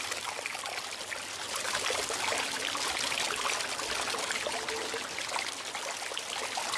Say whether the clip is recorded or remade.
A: recorded